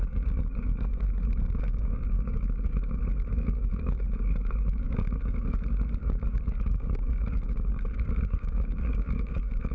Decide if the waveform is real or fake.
fake